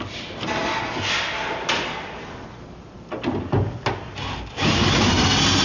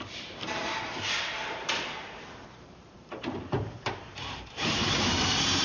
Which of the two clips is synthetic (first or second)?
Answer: second